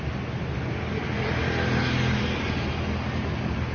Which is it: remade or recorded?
recorded